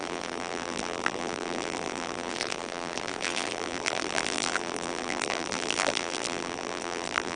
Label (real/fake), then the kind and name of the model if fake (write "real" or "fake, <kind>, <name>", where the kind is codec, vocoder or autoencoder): fake, vocoder, BigVGAN v2